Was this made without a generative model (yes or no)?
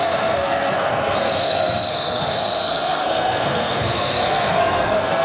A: no